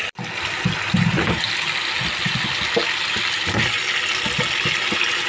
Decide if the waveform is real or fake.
real